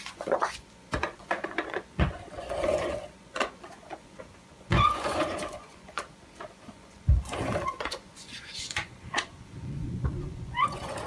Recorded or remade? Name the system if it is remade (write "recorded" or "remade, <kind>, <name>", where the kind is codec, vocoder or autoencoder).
remade, vocoder, Vocos